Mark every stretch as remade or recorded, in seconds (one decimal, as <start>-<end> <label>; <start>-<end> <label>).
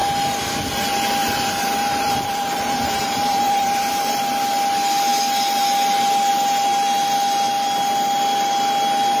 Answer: 0.0-1.2 recorded; 1.2-4.2 remade; 4.2-9.2 recorded